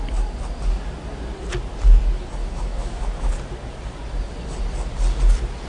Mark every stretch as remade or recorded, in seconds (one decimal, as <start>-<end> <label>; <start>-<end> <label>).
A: 0.0-2.4 recorded; 2.4-3.3 remade; 3.3-5.7 recorded